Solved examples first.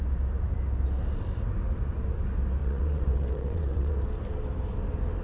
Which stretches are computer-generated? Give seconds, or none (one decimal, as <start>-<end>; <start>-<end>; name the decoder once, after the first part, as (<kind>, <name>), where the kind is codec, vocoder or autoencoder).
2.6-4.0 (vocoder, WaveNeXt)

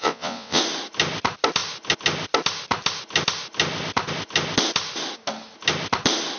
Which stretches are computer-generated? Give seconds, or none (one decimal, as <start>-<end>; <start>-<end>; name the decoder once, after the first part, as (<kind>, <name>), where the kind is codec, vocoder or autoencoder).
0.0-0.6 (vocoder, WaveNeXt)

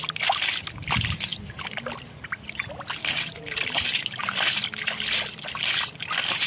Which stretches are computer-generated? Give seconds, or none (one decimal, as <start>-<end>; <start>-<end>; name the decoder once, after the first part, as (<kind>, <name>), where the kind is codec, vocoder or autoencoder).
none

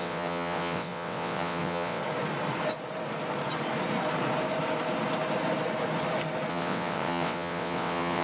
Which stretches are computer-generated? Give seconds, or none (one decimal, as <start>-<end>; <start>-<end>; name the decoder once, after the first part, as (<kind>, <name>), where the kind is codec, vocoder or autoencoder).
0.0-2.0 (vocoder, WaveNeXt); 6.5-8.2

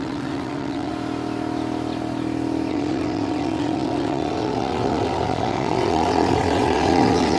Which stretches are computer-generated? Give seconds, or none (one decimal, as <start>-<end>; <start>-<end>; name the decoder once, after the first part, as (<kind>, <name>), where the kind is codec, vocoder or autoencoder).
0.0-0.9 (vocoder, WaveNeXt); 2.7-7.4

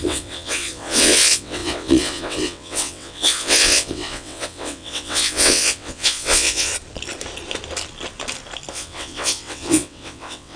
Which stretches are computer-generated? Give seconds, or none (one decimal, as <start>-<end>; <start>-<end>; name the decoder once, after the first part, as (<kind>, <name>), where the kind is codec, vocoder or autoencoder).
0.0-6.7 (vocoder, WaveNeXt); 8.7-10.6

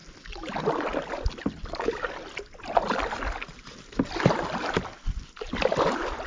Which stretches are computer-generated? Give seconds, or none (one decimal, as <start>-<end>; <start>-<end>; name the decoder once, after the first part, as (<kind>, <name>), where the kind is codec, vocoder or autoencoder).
none